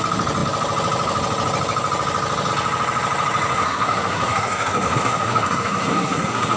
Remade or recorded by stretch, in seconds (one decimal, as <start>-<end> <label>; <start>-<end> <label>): 0.0-3.5 recorded; 3.5-6.6 remade